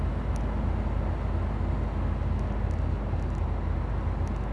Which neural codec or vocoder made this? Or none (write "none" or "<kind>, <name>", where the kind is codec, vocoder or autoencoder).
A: none